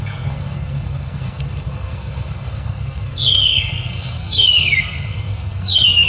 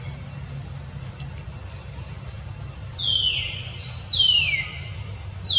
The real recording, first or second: second